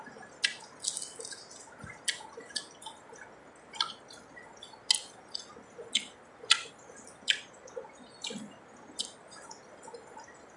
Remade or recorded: recorded